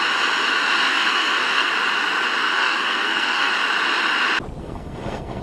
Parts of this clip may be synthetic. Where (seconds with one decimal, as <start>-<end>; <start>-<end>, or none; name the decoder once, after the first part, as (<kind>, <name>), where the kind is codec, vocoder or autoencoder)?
0.9-1.7 (codec, SNAC); 2.4-3.5; 4.6-5.4